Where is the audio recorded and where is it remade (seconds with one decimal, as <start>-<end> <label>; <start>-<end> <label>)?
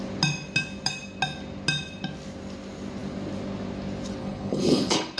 0.0-4.2 recorded; 4.2-5.2 remade